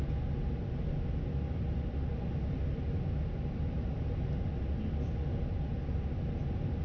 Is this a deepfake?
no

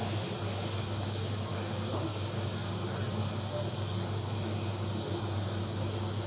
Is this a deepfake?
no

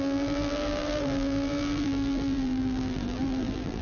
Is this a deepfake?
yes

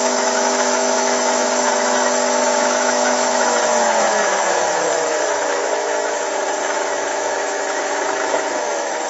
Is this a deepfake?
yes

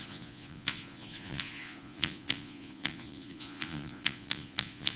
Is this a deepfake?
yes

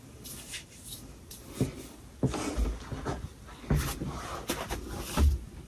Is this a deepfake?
no